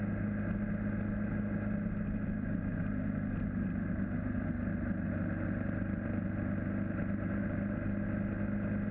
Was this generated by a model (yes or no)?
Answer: no